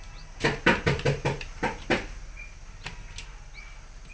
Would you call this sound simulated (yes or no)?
no